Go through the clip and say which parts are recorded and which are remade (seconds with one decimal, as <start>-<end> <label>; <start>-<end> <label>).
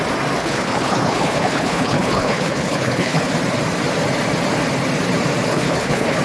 0.0-0.4 recorded; 0.4-3.3 remade; 3.3-5.5 recorded; 5.5-6.2 remade